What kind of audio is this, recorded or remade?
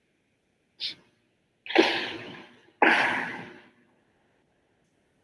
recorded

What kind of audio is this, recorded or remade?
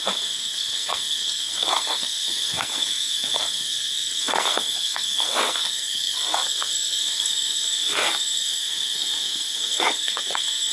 remade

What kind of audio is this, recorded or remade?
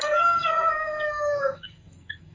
remade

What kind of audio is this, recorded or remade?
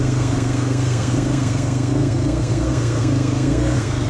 remade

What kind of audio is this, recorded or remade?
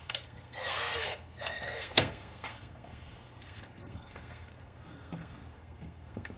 remade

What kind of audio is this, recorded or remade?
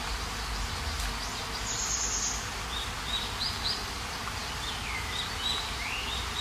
recorded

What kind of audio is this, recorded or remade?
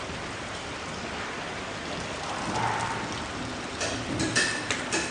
recorded